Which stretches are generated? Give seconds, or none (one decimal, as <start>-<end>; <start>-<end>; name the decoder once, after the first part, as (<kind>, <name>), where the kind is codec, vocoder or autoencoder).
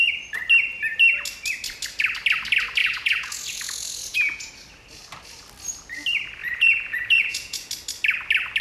2.8-4.5 (vocoder, Vocos); 6.4-7.7